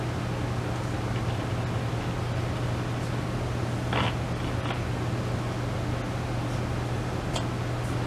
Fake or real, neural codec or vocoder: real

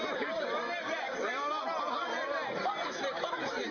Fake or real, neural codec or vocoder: fake, vocoder, BigVGAN v2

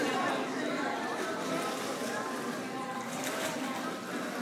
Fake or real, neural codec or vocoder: real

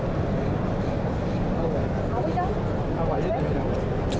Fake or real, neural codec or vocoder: real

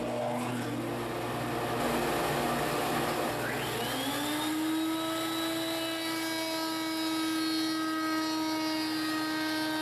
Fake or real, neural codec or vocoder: real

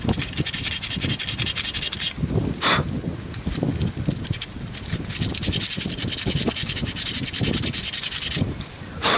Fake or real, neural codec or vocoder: real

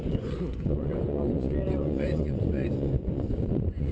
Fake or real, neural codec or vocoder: fake, vocoder, Vocos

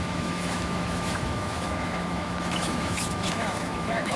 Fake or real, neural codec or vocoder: fake, autoencoder, DAC-VAE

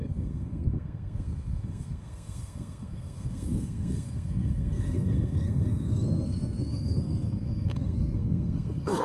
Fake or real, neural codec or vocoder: fake, codec, SNAC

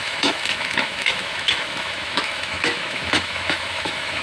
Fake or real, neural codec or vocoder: fake, autoencoder, DAC-VAE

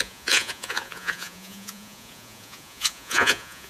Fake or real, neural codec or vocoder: fake, vocoder, Vocos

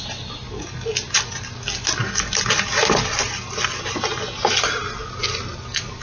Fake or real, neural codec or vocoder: real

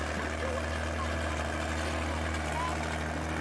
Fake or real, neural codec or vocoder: real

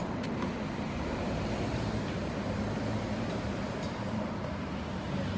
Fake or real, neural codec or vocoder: real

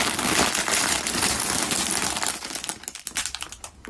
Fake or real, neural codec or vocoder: real